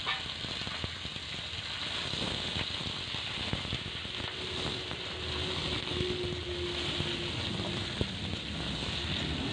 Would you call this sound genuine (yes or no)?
yes